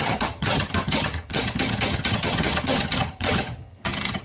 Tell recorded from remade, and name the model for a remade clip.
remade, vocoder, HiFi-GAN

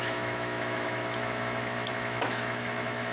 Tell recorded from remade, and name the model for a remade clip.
remade, autoencoder, DAC-VAE